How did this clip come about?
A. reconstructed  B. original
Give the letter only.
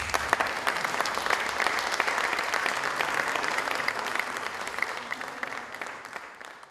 A